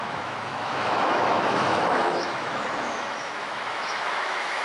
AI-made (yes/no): yes